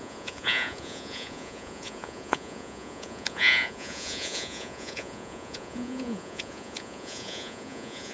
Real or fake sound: fake